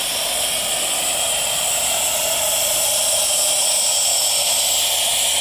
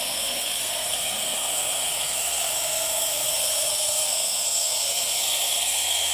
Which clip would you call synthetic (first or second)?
second